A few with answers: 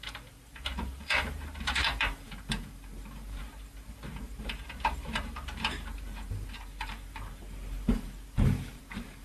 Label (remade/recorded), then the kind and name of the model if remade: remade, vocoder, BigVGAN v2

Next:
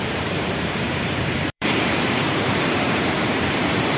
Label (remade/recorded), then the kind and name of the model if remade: remade, vocoder, BigVGAN v2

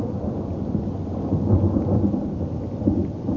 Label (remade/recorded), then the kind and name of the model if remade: recorded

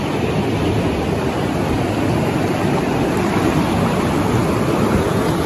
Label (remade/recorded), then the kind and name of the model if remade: recorded